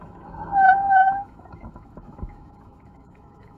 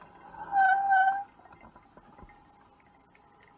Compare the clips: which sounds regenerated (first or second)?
first